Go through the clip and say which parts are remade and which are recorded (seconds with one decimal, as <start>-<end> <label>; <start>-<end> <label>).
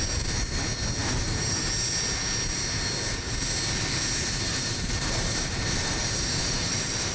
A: 0.0-1.0 recorded; 1.0-1.7 remade; 1.7-4.5 recorded; 4.5-7.1 remade